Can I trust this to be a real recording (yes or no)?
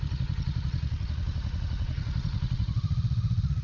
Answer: no